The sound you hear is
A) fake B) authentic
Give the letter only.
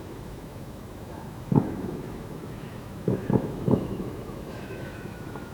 A